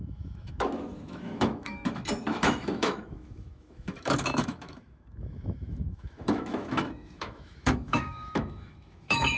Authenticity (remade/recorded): remade